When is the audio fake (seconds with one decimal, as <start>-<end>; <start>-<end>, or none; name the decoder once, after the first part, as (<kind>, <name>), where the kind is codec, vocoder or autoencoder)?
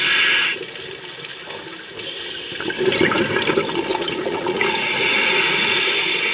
3.9-5.8 (vocoder, Vocos)